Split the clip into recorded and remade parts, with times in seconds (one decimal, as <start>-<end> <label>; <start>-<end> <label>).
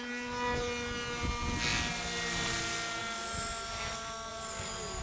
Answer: 0.0-5.0 recorded